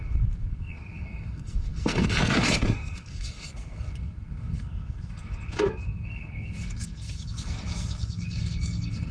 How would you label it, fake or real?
fake